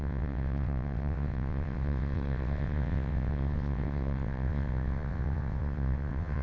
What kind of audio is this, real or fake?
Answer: fake